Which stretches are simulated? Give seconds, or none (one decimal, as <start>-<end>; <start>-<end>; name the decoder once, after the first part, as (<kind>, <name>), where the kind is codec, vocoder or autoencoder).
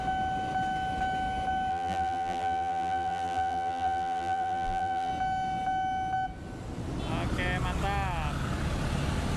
1.7-5.1 (vocoder, BigVGAN v2)